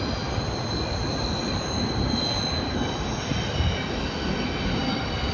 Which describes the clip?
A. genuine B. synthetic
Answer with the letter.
A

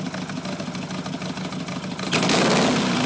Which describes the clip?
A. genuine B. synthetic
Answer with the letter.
A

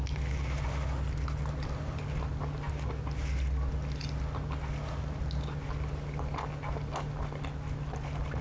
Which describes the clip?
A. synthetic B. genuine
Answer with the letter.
B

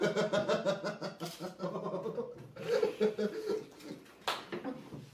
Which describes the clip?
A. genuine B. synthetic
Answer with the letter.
A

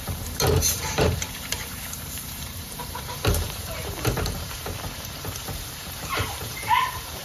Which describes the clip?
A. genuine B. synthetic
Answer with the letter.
B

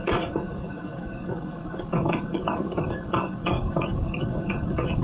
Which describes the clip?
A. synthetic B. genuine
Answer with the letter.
A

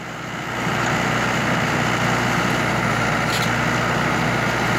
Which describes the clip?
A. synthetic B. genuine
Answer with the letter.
B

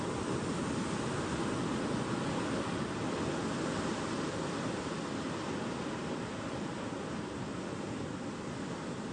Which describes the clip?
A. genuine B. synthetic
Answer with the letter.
A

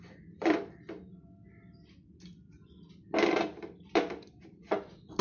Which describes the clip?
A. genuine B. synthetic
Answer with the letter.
A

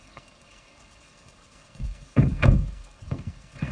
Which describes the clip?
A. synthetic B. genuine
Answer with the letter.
A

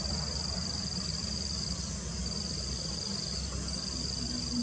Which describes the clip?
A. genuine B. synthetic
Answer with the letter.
B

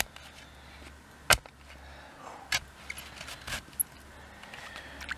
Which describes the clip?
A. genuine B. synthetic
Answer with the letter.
A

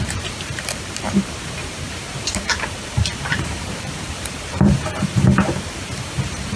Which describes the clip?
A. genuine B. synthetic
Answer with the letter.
B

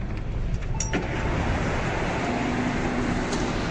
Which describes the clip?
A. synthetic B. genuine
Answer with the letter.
B